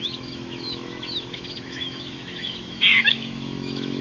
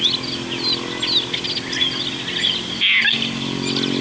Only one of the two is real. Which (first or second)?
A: second